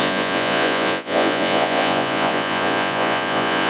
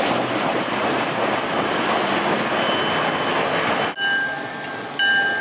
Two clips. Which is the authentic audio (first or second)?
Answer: second